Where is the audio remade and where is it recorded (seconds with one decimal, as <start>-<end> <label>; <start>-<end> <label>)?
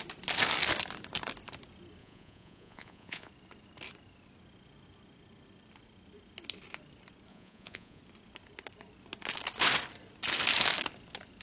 0.0-2.0 recorded; 2.0-3.3 remade; 3.3-7.3 recorded; 7.3-8.0 remade; 8.0-11.4 recorded